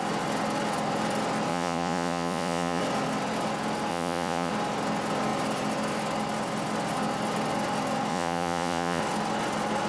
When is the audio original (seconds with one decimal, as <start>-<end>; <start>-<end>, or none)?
0.0-1.5; 2.8-3.9; 4.5-8.1; 9.0-9.9